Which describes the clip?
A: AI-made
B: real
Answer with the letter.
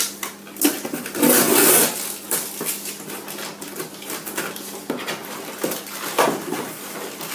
B